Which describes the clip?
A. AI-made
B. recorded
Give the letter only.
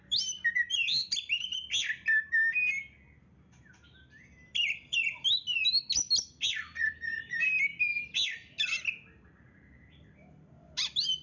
B